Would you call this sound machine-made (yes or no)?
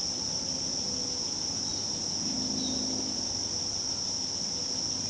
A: no